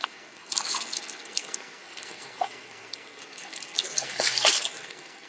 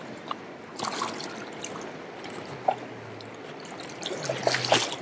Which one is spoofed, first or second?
first